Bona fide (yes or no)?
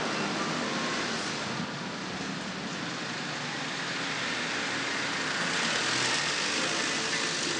yes